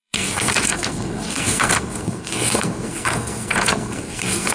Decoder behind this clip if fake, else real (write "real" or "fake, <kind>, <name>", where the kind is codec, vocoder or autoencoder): fake, codec, SNAC